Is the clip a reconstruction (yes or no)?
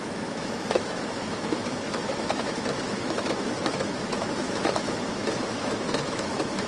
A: yes